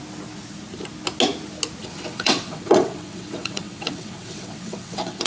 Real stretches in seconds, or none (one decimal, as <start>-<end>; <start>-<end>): 0.0-1.8